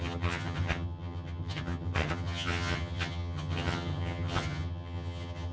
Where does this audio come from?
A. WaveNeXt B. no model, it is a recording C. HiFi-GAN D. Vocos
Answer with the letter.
C